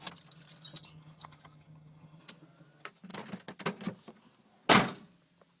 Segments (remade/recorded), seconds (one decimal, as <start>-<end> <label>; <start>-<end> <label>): 0.0-0.8 recorded; 0.8-2.2 remade; 2.2-5.6 recorded